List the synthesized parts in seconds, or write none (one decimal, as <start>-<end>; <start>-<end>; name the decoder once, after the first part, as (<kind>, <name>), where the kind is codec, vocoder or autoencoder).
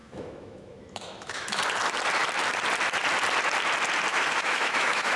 0.0-1.6 (autoencoder, DAC-VAE); 4.1-5.2